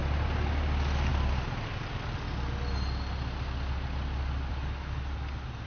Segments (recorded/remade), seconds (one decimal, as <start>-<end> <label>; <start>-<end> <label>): 0.0-5.7 recorded

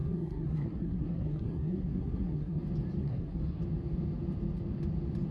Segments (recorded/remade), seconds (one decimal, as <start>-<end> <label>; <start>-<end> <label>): 0.0-2.6 remade; 2.6-3.0 recorded; 3.0-3.6 remade; 3.6-5.3 recorded

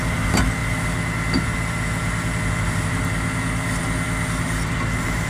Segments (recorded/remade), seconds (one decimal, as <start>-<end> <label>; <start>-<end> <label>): 0.0-5.3 recorded

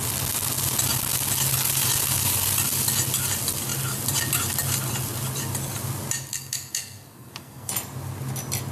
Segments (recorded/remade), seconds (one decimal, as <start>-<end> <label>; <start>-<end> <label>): 0.0-6.3 recorded; 6.3-7.7 remade; 7.7-8.7 recorded

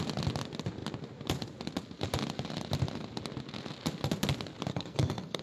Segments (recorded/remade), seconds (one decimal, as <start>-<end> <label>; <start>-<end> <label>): 0.0-4.7 recorded; 4.7-5.4 remade